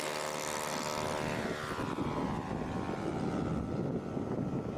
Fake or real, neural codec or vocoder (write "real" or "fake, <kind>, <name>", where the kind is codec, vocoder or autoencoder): real